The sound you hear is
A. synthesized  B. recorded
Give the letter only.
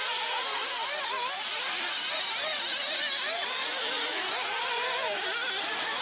B